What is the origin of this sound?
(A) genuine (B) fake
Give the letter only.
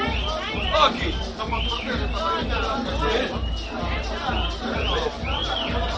B